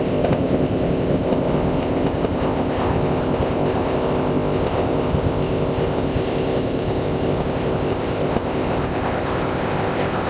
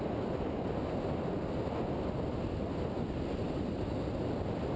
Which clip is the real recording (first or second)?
second